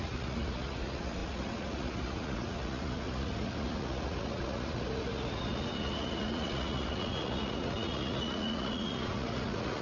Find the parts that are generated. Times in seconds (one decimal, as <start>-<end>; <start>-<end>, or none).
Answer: 0.0-9.8